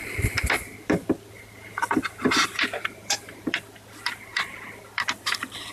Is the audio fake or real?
fake